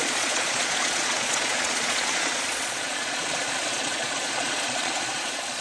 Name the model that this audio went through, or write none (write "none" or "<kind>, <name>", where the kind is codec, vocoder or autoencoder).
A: vocoder, Vocos